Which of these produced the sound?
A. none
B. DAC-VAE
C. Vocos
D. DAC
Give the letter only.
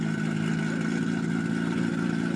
A